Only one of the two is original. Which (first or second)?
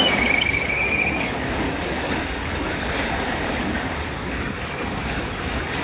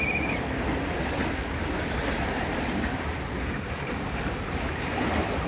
second